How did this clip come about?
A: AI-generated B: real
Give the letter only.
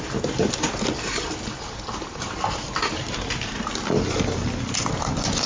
B